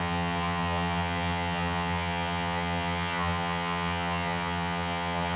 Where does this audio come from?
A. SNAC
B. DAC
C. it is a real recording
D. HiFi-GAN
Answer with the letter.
D